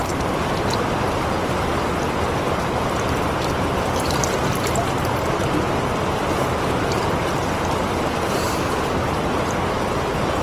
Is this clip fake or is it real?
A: real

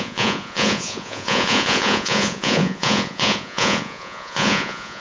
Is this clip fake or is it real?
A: fake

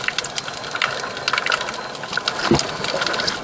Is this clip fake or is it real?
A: real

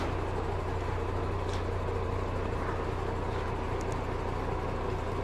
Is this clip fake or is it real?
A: real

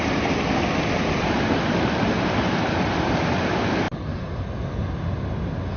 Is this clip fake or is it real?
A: real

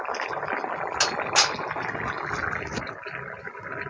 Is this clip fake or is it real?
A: real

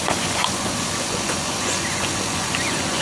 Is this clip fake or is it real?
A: fake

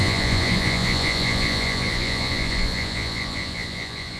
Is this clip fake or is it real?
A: fake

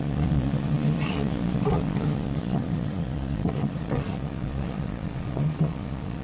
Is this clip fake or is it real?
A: fake